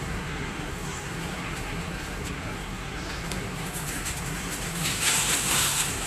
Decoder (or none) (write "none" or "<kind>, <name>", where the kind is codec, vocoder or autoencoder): codec, SNAC